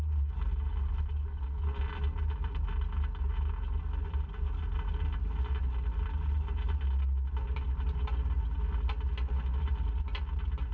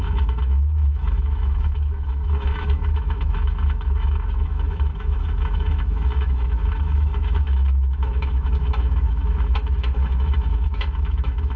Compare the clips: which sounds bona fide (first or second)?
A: first